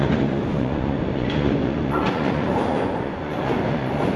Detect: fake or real fake